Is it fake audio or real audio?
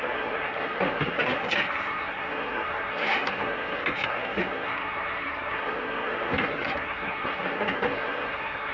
fake